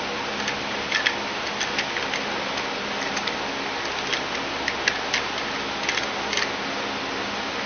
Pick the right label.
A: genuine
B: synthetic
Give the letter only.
A